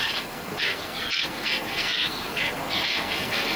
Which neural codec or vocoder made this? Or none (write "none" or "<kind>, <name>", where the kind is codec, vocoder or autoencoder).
codec, SNAC